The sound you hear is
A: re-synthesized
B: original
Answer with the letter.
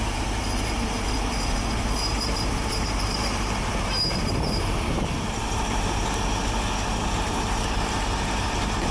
A